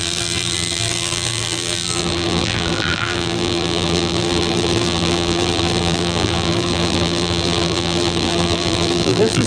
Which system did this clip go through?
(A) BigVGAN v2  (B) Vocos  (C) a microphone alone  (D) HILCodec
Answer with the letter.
A